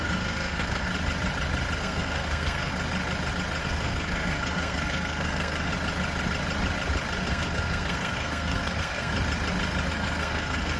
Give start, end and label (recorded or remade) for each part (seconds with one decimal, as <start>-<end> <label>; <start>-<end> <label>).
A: 0.0-0.9 remade; 0.9-1.8 recorded; 1.8-2.7 remade; 2.7-3.6 recorded; 3.6-5.7 remade; 5.7-7.2 recorded; 7.2-9.1 remade; 9.1-9.9 recorded; 9.9-10.8 remade